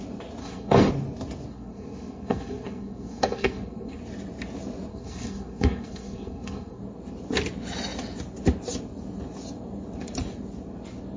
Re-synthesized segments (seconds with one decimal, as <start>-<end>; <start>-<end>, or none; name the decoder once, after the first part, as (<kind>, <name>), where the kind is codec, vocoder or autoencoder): 0.4-0.9 (codec, SNAC); 1.5-4.0; 4.9-6.8